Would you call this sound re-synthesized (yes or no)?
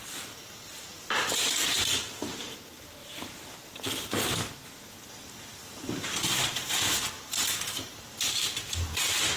yes